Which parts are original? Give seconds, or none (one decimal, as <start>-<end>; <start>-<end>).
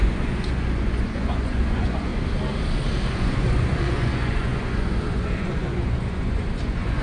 2.1-3.1